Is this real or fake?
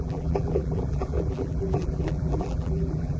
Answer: fake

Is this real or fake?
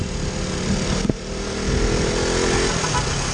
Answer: real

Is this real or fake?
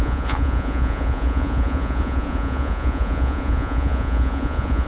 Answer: fake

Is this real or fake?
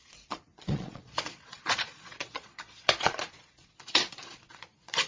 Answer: fake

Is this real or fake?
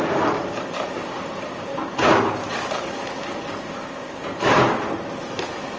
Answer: fake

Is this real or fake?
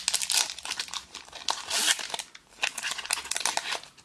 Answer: real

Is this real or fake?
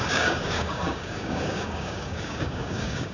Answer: fake